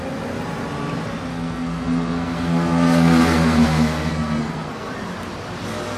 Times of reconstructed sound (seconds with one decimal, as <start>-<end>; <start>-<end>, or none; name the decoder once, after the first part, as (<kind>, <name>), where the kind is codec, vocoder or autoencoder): 1.3-4.9 (codec, SNAC)